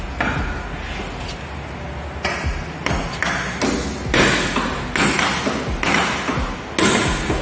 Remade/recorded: recorded